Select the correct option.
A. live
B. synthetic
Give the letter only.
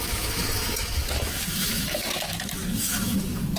B